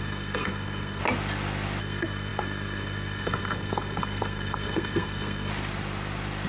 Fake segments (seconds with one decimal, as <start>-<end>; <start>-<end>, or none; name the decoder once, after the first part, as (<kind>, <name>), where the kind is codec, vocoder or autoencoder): 0.0-1.0 (codec, SNAC); 1.8-5.5